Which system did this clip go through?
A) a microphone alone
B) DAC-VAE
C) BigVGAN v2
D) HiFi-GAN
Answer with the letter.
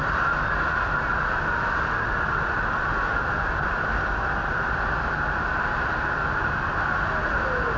A